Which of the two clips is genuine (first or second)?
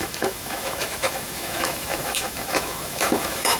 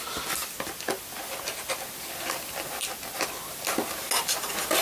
second